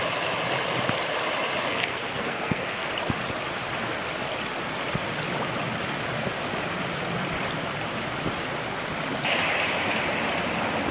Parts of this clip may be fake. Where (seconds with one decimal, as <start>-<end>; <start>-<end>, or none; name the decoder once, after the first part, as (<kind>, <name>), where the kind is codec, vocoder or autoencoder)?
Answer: 1.7-2.9 (codec, SNAC)